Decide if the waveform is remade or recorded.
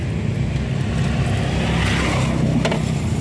recorded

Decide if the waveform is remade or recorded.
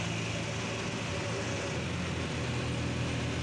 recorded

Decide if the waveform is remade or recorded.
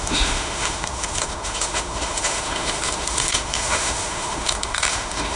remade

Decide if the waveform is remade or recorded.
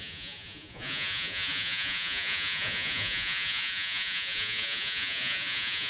remade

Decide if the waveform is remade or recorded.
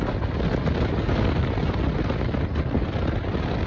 recorded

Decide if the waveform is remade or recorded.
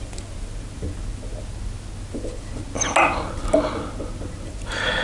recorded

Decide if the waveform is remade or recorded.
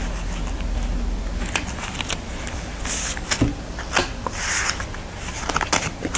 recorded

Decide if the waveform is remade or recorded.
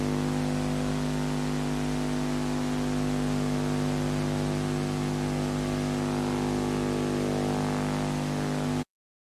recorded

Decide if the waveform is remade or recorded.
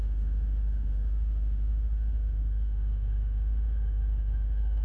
remade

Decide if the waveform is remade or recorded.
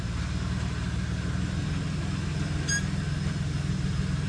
recorded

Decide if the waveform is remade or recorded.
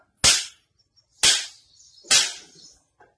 recorded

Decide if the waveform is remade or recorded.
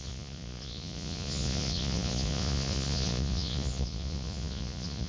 remade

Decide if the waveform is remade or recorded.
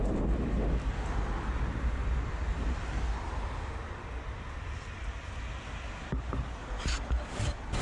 recorded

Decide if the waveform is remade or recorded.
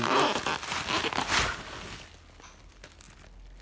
recorded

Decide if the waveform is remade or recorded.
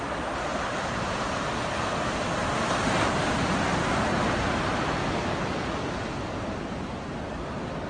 recorded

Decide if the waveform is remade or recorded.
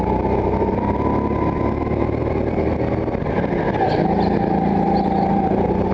recorded